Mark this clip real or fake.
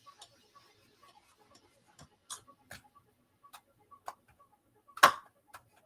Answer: real